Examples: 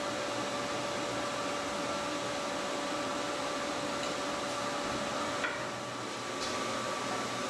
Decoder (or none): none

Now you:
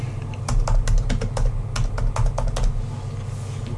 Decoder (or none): none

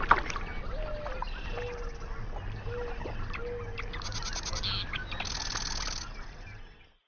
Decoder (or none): none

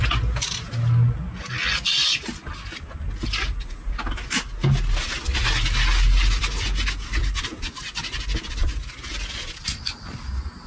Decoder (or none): none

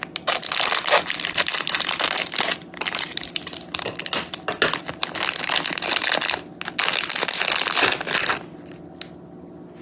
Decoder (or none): none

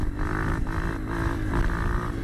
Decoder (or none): none